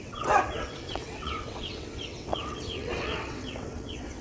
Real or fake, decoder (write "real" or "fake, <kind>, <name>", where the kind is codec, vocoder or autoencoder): fake, vocoder, WaveNeXt